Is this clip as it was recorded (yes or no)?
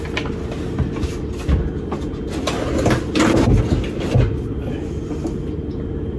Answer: yes